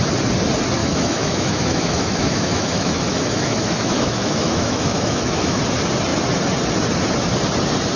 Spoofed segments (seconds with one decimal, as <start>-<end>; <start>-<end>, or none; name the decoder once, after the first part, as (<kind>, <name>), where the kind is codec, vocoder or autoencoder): 0.8-5.6 (autoencoder, DAC-VAE)